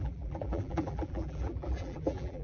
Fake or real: fake